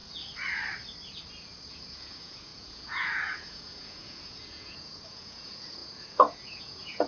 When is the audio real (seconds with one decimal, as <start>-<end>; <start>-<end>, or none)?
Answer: 0.0-1.7